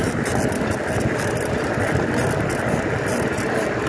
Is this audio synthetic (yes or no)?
no